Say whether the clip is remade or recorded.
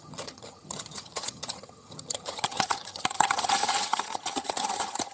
remade